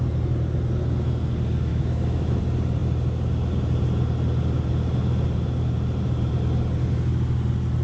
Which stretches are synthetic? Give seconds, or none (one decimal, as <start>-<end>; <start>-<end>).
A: 1.7-2.4